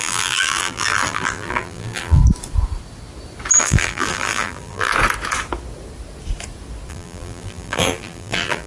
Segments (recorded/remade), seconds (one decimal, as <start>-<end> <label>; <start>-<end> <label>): 0.0-2.2 remade; 2.2-3.6 recorded; 3.6-4.9 remade; 4.9-6.9 recorded; 6.9-8.7 remade